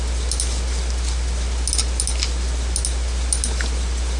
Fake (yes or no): no